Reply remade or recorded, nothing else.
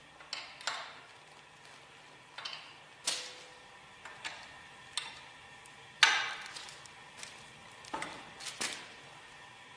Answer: recorded